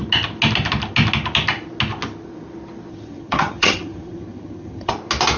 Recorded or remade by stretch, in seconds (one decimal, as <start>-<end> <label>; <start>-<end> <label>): 0.0-2.9 recorded; 2.9-4.9 remade; 4.9-5.4 recorded